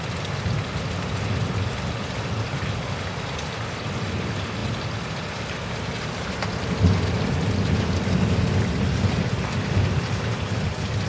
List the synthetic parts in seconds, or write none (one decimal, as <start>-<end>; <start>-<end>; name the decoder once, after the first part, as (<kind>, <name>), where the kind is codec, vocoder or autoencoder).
none

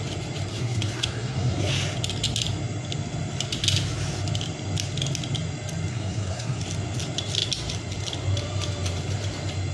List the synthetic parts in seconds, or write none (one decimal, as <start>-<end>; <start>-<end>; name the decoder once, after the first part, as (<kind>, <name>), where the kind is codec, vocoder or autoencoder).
0.5-1.7 (codec, SNAC); 5.9-6.6

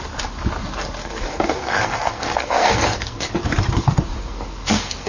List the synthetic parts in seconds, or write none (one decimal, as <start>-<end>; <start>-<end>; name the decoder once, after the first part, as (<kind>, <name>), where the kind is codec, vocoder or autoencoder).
1.0-3.3 (codec, SNAC); 4.2-5.1

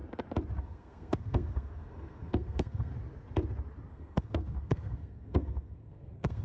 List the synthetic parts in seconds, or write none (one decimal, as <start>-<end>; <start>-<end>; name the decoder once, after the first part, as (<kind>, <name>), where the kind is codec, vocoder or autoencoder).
0.6-2.9 (codec, SNAC); 3.9-6.4